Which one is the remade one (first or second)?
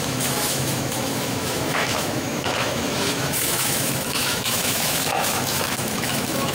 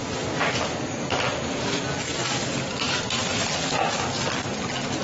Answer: first